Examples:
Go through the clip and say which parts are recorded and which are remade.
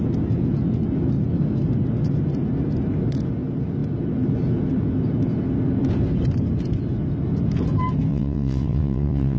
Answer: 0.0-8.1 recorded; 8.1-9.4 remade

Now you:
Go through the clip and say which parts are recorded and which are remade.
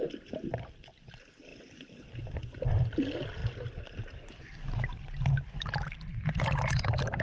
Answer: 0.0-7.2 recorded